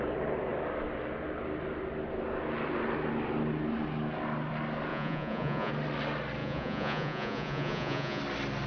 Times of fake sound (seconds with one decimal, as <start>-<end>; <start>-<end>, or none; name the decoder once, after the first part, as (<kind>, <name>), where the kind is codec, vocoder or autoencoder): 4.9-5.7 (vocoder, Vocos); 6.4-8.2